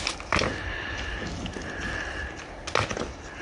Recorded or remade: recorded